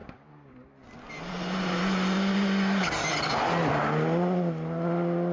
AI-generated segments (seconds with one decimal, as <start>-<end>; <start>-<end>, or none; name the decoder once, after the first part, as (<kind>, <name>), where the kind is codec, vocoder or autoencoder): none